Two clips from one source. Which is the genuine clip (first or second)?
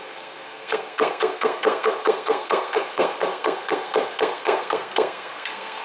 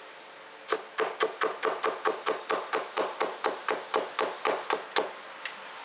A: second